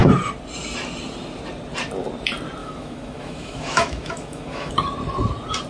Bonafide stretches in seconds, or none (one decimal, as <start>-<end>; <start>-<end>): 0.0-2.6; 4.7-5.7